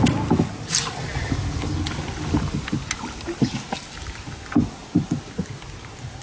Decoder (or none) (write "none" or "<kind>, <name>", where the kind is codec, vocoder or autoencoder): none